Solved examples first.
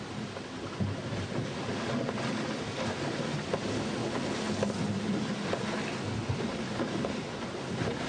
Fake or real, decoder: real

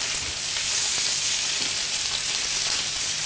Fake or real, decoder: real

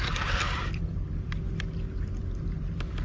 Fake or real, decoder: real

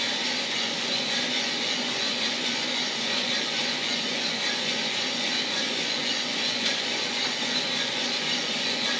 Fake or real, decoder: fake, vocoder, Vocos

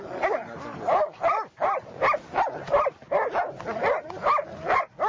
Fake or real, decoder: real